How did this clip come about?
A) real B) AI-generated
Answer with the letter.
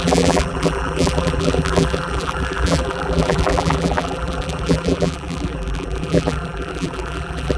B